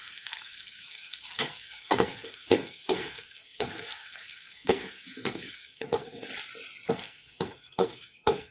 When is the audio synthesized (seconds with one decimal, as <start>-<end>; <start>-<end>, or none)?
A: 0.0-6.3; 6.9-8.5